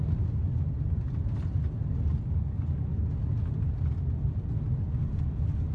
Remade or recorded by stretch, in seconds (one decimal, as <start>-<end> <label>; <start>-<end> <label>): 0.0-5.7 recorded